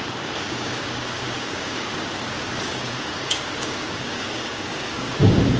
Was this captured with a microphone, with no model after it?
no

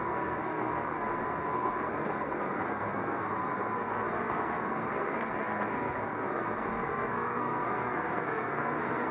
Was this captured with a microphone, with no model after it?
no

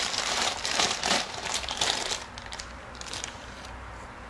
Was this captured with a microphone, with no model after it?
no